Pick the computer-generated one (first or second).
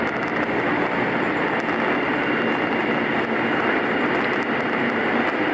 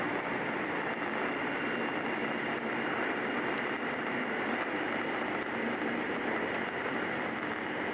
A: second